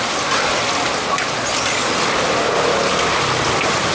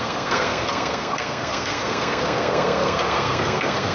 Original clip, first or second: first